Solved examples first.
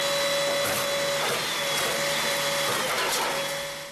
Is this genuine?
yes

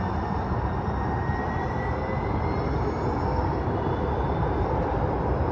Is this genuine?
yes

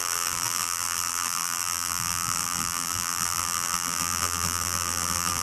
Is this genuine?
no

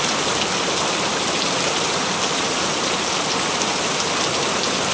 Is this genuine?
no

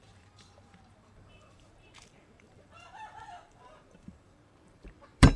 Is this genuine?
no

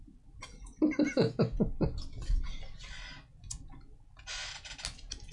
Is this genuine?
yes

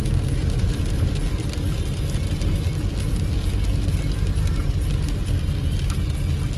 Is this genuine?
yes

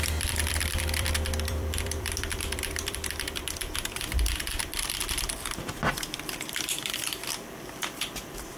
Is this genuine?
no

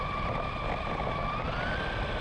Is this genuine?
yes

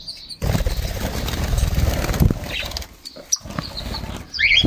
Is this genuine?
yes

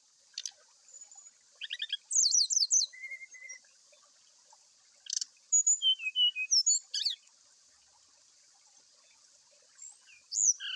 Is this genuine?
yes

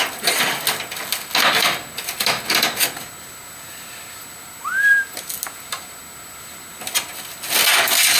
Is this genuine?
yes